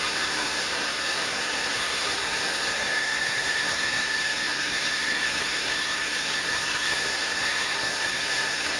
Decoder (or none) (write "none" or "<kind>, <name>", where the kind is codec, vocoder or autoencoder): codec, SNAC